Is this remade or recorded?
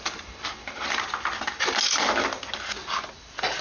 recorded